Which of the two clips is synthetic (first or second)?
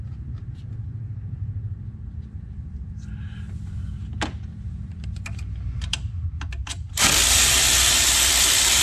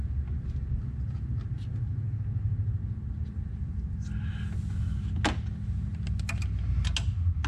first